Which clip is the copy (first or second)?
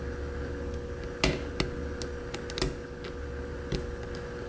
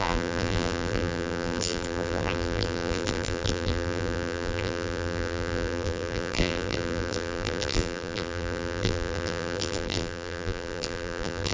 second